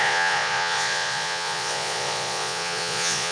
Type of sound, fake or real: fake